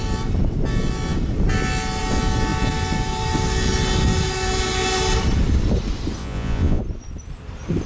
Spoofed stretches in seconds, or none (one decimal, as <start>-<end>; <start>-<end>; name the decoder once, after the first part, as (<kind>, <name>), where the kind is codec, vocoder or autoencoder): 6.2-6.8 (vocoder, Vocos)